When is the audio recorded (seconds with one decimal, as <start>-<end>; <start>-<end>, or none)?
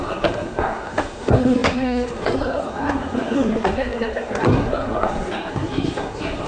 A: none